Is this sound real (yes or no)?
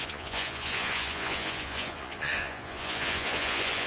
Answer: no